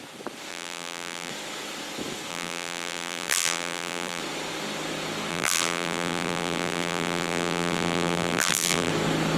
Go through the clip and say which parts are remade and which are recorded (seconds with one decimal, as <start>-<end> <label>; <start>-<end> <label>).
0.0-0.5 recorded; 0.5-1.3 remade; 1.3-2.3 recorded; 2.3-4.2 remade; 4.2-5.3 recorded; 5.3-8.9 remade; 8.9-9.4 recorded